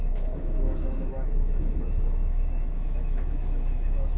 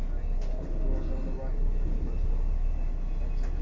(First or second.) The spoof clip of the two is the first